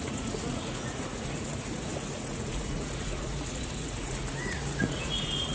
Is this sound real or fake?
fake